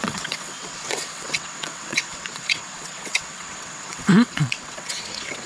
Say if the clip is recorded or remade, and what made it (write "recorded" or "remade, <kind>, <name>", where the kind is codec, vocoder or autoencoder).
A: remade, vocoder, WaveNeXt